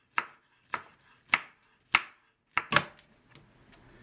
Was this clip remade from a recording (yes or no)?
no